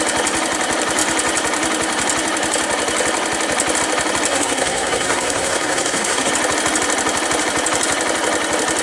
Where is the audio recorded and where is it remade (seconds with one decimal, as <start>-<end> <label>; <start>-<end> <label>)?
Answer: 0.0-4.3 recorded; 4.3-6.3 remade; 6.3-8.8 recorded